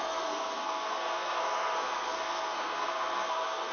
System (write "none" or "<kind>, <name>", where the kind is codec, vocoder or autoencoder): codec, SNAC